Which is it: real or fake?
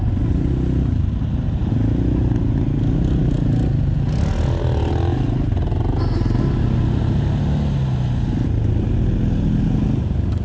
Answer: real